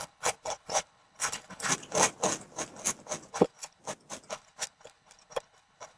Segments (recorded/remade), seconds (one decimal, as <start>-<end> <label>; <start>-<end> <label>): 0.0-1.7 remade; 1.7-3.3 recorded; 3.3-3.8 remade; 3.8-4.3 recorded; 4.3-6.0 remade